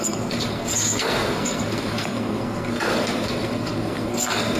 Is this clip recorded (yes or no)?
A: no